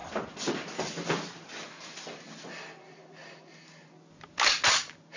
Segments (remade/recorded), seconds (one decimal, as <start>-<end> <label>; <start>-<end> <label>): 0.0-5.2 recorded